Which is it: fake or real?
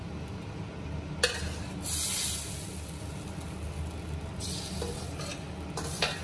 real